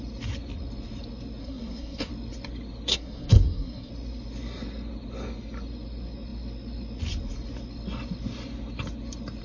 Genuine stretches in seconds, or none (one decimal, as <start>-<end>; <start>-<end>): 0.0-1.4; 2.1-2.9; 3.9-9.4